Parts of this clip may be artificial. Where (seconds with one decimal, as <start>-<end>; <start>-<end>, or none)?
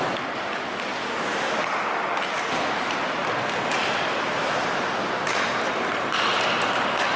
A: none